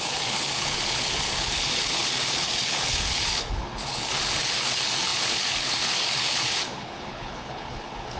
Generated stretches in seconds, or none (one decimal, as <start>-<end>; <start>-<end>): 0.0-8.2